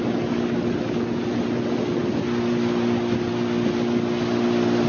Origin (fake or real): real